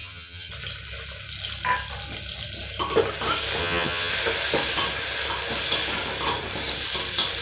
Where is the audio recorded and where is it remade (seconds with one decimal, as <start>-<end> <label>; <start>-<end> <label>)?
0.0-0.5 remade; 0.5-3.6 recorded; 3.6-4.1 remade; 4.1-7.4 recorded